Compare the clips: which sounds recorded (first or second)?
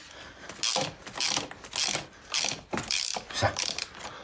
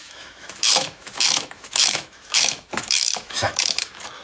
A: first